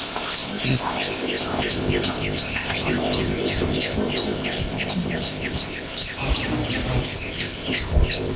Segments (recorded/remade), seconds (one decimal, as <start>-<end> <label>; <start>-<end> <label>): 0.0-6.2 remade; 6.2-7.0 recorded; 7.0-8.4 remade